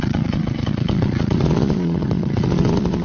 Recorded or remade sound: remade